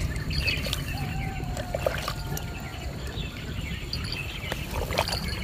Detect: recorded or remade recorded